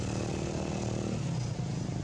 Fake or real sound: real